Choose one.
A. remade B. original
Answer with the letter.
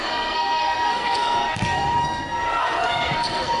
A